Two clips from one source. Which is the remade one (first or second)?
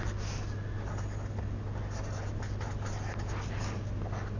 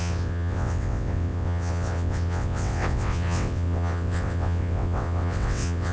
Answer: second